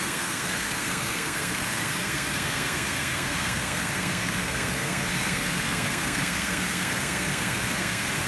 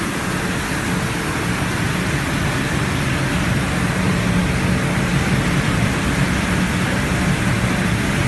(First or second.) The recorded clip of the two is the second